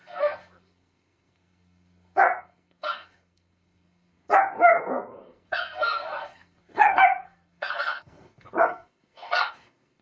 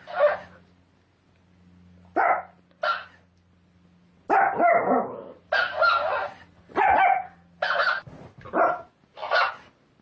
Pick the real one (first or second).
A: second